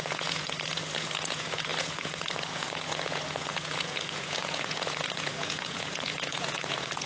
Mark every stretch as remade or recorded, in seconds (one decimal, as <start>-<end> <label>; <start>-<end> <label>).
0.0-7.1 remade